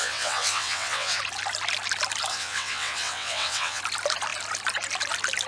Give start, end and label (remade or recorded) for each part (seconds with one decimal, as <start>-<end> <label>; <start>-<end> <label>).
0.0-1.2 remade; 1.2-2.3 recorded; 2.3-3.8 remade; 3.8-5.5 recorded